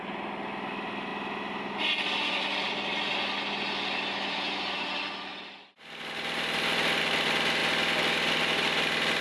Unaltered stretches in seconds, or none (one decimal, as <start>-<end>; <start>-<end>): 0.0-5.3; 7.0-9.2